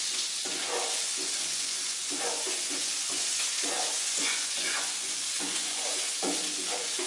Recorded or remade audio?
remade